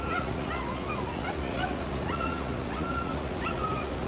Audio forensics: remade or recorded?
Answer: remade